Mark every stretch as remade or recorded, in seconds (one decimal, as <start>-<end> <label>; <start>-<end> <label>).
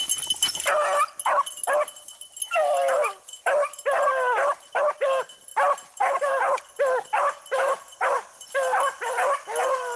0.0-10.0 recorded